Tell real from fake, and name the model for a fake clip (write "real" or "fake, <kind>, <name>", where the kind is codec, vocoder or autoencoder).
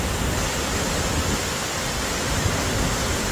real